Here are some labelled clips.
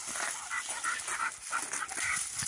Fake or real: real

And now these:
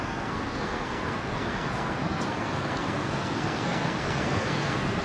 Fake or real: fake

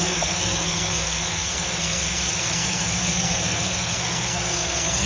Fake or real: fake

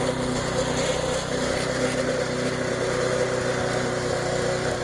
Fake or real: real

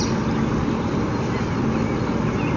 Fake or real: real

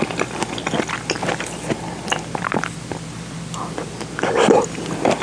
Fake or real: real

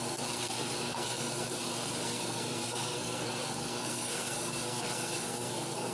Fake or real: fake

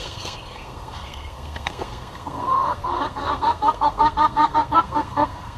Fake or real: fake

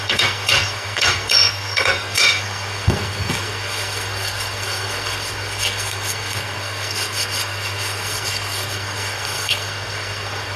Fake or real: fake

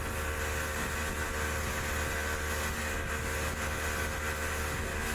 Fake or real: real